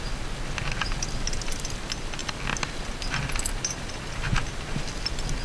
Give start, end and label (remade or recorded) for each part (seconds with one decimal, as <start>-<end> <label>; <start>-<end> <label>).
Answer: 0.0-5.4 recorded